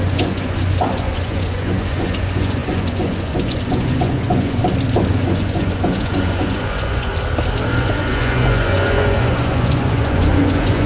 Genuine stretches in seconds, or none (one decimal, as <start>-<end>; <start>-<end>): 4.6-5.1; 7.1-7.8